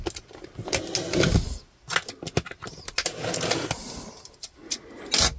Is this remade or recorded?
recorded